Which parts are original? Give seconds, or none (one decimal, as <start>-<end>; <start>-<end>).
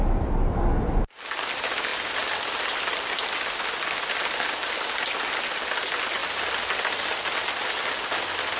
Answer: 0.0-1.9; 3.3-8.6